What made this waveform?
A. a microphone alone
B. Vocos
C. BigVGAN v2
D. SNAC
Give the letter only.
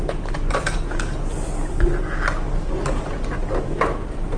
A